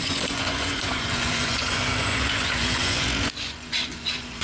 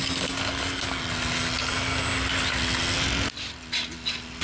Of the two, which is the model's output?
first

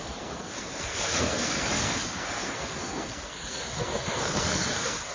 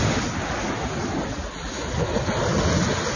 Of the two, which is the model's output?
first